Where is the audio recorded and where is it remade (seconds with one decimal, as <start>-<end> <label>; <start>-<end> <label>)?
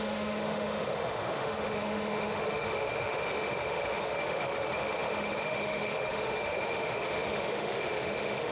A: 0.0-8.5 remade